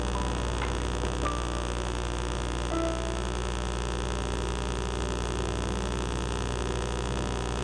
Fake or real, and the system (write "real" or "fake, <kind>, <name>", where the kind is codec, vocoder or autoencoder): real